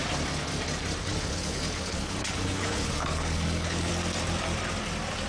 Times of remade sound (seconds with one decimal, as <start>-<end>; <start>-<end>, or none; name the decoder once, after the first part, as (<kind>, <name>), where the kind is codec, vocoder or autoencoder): 1.0-3.9 (codec, HILCodec)